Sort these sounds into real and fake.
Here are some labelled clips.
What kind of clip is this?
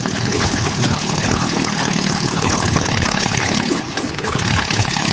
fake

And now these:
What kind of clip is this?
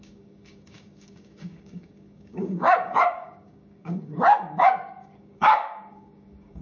fake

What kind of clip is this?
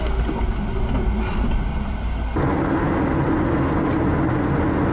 real